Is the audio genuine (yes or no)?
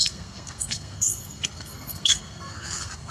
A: no